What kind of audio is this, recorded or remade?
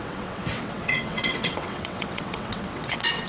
remade